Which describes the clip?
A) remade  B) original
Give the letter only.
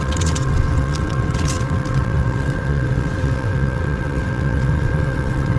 A